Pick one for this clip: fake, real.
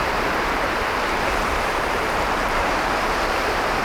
fake